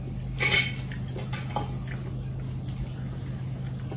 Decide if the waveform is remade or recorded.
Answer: recorded